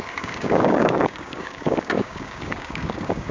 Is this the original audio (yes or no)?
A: no